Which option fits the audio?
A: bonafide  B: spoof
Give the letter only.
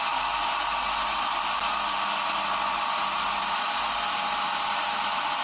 A